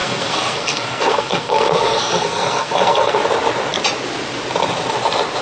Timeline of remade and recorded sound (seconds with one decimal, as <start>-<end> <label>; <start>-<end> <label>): 0.0-3.2 remade; 3.2-5.4 recorded